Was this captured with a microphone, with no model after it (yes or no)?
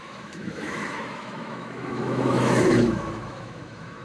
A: no